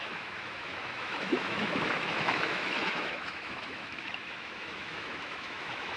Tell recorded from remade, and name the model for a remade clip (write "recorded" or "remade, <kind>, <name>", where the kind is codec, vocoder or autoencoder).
remade, autoencoder, DAC-VAE